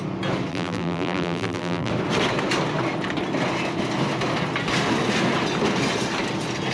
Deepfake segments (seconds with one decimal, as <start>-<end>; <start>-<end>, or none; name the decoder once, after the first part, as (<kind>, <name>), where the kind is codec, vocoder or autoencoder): 0.5-1.9 (vocoder, BigVGAN v2)